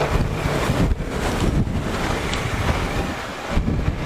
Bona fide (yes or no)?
yes